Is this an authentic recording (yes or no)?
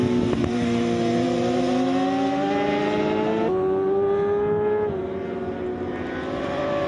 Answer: yes